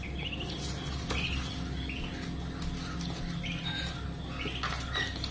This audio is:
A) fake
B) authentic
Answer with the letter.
B